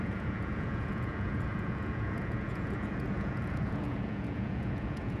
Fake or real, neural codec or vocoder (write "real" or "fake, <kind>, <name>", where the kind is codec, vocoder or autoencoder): fake, vocoder, Vocos